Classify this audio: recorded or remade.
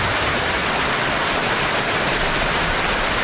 recorded